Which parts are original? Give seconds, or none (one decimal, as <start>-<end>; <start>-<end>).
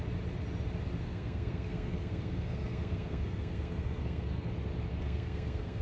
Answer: 0.0-1.0; 4.5-4.9